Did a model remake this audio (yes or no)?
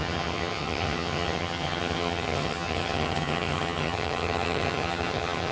yes